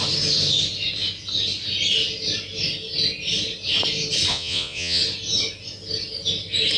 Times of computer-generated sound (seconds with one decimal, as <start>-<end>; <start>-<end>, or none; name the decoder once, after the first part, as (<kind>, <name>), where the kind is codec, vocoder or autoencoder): 4.3-5.0 (vocoder, Vocos)